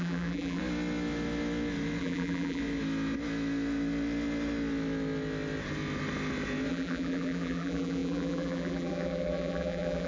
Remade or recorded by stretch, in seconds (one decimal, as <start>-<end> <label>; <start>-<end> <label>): 0.0-0.6 remade; 0.6-2.0 recorded; 2.0-2.6 remade; 2.6-6.7 recorded; 6.7-10.1 remade